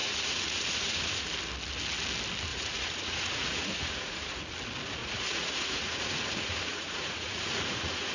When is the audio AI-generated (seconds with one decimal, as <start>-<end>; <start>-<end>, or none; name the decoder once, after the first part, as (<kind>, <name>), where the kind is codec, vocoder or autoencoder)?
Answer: 0.0-1.3 (vocoder, Vocos); 2.5-4.5; 5.0-8.1